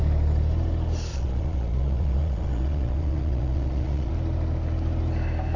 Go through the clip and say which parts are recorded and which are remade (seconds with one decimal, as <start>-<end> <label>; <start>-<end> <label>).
0.0-1.1 recorded; 1.1-4.1 remade; 4.1-5.6 recorded